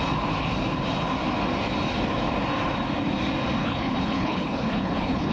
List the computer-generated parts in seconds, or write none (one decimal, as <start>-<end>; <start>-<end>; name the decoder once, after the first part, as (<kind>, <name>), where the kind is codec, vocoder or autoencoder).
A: 3.6-5.3 (codec, HILCodec)